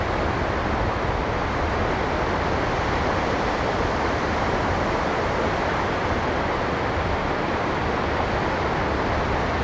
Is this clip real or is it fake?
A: real